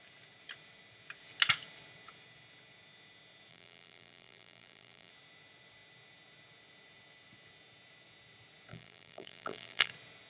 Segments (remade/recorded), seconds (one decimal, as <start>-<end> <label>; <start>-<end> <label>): 0.0-3.5 recorded; 3.5-5.1 remade; 5.1-8.7 recorded; 8.7-9.9 remade; 9.9-10.3 recorded